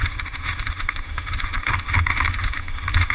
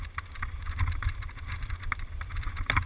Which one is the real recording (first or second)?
second